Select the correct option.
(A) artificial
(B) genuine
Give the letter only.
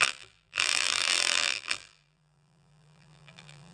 A